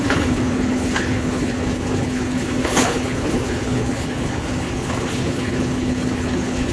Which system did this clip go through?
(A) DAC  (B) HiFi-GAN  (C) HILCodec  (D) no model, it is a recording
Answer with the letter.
C